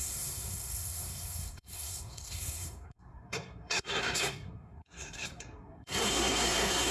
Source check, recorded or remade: remade